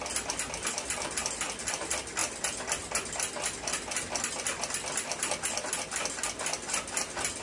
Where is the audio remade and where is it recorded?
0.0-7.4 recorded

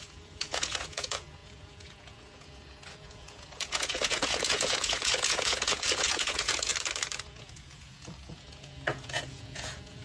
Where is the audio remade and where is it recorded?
0.0-6.7 remade; 6.7-7.3 recorded; 7.3-10.0 remade

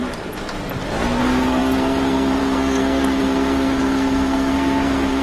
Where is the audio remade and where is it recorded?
0.0-1.2 recorded; 1.2-5.2 remade

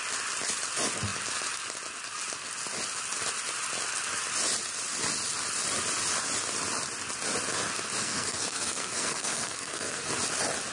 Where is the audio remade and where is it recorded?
0.0-8.0 recorded; 8.0-10.1 remade; 10.1-10.7 recorded